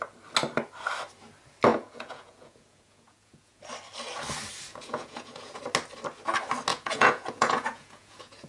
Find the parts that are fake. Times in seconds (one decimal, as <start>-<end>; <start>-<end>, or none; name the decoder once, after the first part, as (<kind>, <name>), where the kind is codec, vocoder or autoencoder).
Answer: 1.7-3.6 (vocoder, Vocos); 4.7-5.6; 6.7-8.5